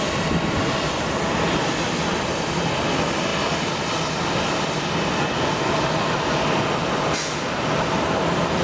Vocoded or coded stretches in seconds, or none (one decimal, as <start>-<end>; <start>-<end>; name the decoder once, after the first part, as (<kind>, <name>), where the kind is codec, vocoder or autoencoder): none